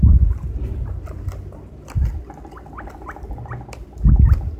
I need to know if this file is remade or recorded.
remade